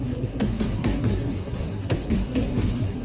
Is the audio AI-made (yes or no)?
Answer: yes